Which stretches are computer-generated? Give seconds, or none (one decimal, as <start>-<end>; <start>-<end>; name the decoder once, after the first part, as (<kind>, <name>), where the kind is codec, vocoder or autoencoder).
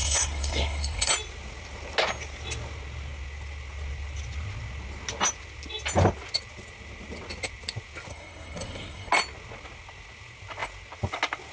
0.0-1.1 (codec, SNAC); 8.1-9.1